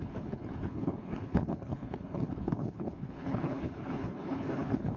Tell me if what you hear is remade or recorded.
remade